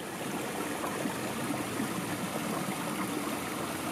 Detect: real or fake real